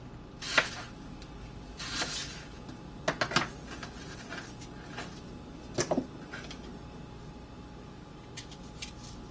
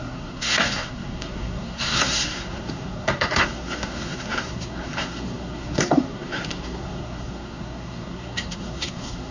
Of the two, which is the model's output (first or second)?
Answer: second